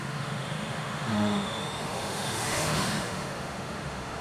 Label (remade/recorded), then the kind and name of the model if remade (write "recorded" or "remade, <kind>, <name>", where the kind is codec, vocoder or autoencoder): remade, autoencoder, DAC-VAE